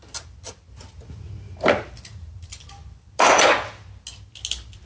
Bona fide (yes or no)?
yes